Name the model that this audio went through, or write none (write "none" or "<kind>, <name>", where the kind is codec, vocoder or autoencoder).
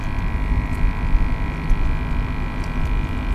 none